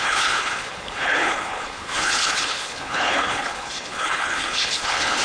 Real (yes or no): no